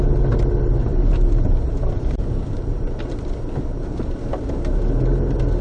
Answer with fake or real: real